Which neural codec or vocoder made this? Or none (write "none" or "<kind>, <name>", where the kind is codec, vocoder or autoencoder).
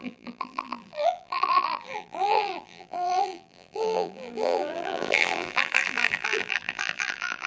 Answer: vocoder, BigVGAN v2